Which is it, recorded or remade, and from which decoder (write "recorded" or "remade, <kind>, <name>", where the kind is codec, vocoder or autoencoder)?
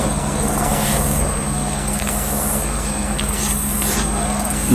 remade, codec, SNAC